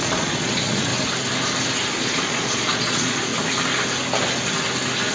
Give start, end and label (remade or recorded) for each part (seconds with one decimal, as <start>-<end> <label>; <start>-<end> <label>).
0.0-0.9 remade; 0.9-2.0 recorded; 2.0-3.3 remade; 3.3-5.1 recorded